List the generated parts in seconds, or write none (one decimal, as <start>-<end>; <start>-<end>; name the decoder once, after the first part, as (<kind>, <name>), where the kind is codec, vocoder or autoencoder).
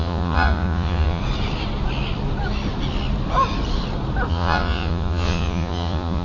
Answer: 0.0-1.2 (vocoder, Vocos); 4.3-6.2